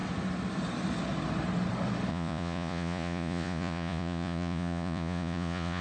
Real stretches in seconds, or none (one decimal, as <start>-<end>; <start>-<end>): 0.0-2.1